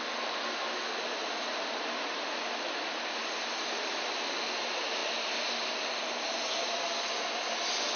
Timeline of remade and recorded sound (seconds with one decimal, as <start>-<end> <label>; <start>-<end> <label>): 0.0-8.0 recorded